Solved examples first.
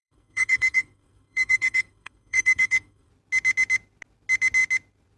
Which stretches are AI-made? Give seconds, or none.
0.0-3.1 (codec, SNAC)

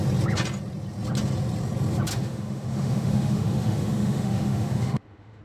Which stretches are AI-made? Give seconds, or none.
2.1-5.4 (autoencoder, DAC-VAE)

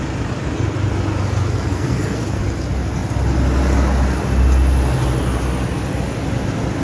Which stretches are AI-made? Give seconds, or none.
1.7-2.4 (codec, SNAC)